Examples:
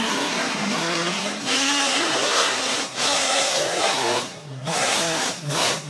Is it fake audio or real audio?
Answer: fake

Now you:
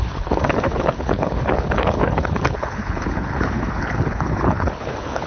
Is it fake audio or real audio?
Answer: fake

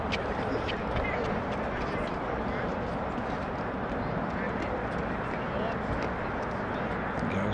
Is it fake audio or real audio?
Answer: real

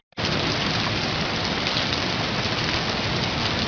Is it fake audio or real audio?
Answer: real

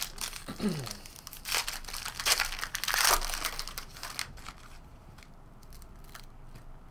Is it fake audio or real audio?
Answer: real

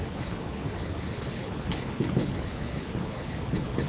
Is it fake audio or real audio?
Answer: fake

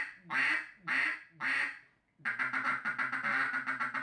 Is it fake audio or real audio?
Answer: real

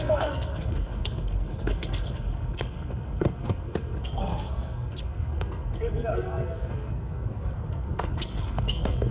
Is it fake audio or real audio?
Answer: fake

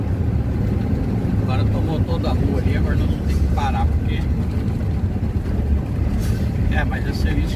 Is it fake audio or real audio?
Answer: real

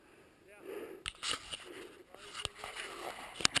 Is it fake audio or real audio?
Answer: real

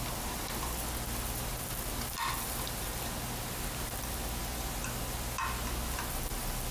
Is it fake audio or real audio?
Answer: real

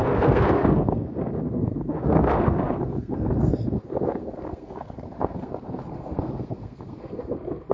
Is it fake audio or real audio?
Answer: fake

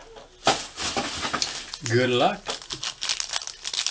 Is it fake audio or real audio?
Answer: real